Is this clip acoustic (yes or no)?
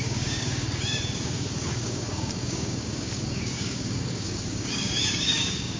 no